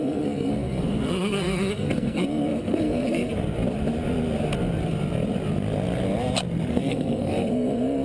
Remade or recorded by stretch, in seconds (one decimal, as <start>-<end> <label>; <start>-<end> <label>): 0.0-3.3 remade; 3.3-6.7 recorded; 6.7-8.0 remade